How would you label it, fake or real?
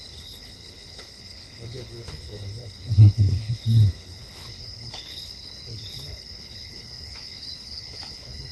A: fake